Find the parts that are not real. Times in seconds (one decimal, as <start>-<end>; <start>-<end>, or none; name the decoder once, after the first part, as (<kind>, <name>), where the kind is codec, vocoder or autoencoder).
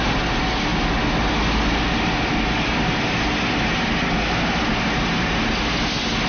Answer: none